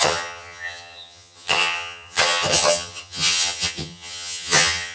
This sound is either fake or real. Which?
fake